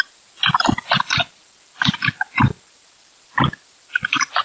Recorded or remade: recorded